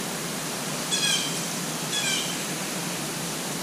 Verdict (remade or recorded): recorded